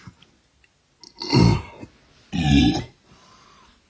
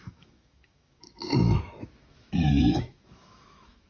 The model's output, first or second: second